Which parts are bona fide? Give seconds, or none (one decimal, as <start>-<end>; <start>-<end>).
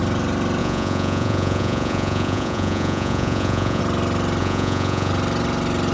0.0-0.6; 3.8-4.4; 5.1-5.9